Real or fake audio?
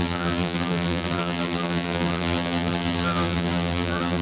fake